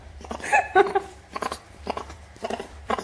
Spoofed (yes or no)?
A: yes